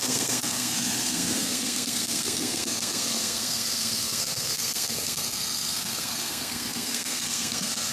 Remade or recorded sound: remade